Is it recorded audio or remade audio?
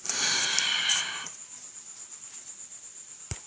recorded